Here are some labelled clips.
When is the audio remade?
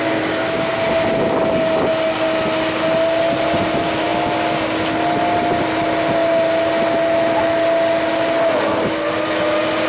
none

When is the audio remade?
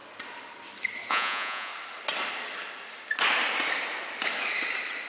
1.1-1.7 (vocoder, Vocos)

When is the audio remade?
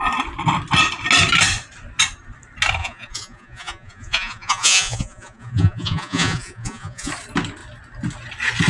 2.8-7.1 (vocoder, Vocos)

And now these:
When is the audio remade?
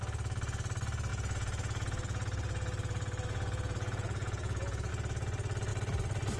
1.1-4.9 (vocoder, Vocos)